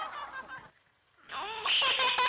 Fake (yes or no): no